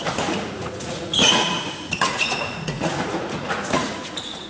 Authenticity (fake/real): fake